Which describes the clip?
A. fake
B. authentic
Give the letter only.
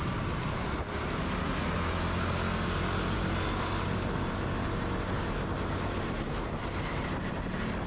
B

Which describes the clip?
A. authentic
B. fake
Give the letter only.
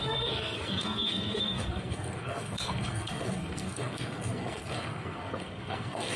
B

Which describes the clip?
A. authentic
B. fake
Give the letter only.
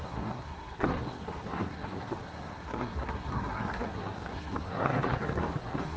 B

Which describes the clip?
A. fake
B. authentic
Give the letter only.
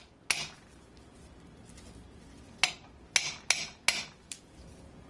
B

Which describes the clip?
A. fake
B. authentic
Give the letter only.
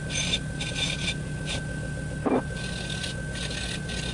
B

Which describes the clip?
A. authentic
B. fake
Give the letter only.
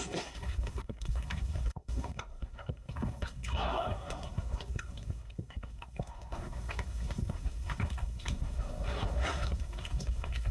B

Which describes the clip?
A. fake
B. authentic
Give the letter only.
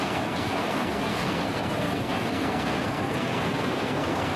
A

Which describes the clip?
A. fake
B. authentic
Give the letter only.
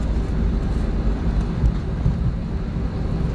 B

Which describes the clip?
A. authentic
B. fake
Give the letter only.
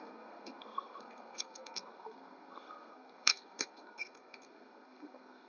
B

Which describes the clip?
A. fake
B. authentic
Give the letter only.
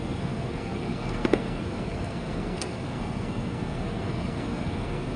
A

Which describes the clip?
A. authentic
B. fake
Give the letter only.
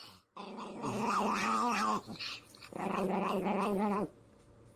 A